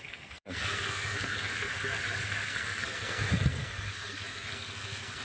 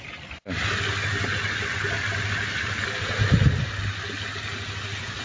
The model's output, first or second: first